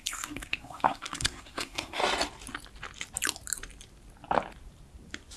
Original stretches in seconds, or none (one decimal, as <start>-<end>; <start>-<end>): 2.0-5.4